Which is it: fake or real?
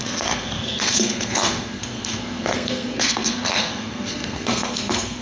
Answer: fake